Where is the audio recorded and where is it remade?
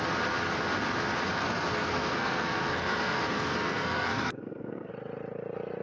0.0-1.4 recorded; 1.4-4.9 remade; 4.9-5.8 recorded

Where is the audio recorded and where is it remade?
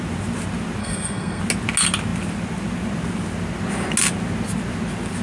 0.0-0.8 recorded; 0.8-1.4 remade; 1.4-5.2 recorded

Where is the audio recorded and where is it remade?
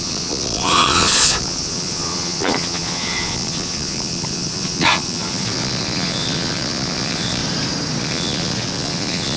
0.0-7.4 remade; 7.4-8.0 recorded; 8.0-9.4 remade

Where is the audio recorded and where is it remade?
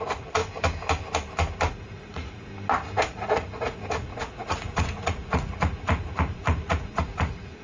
0.0-0.4 remade; 0.4-1.7 recorded; 1.7-2.5 remade; 2.5-3.0 recorded; 3.0-7.6 remade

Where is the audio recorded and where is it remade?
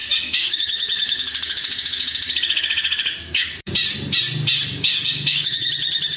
0.0-3.7 remade; 3.7-4.7 recorded; 4.7-5.7 remade; 5.7-6.2 recorded